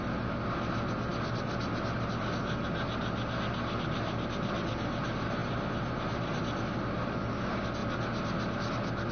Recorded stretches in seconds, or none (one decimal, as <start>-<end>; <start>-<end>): 0.0-9.1